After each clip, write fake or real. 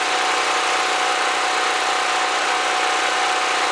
real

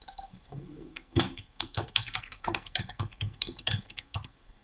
fake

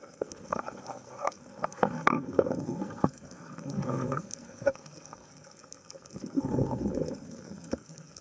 fake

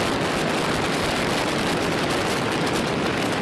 real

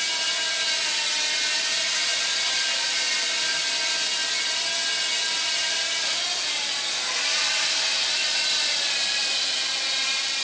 real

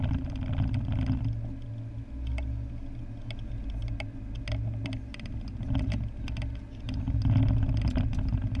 real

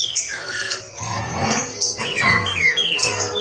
fake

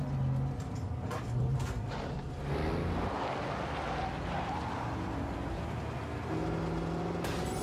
real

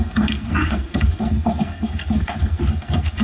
fake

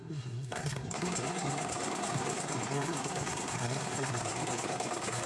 fake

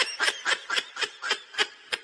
real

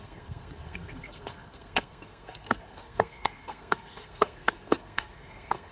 fake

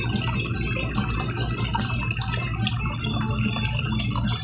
real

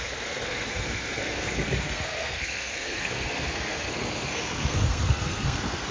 fake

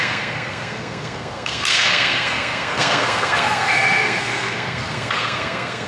fake